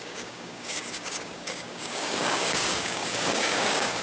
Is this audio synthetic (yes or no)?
yes